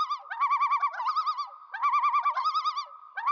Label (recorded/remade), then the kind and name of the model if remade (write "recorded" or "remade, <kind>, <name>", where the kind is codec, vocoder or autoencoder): recorded